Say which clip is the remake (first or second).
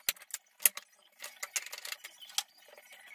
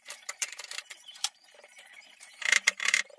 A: second